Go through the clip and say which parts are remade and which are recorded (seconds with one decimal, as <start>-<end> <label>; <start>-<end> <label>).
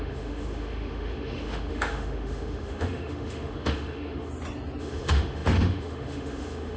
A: 0.0-4.3 remade; 4.3-4.8 recorded; 4.8-6.8 remade